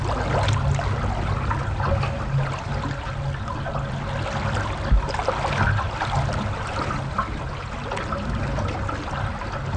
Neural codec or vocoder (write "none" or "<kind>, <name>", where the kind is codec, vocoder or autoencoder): none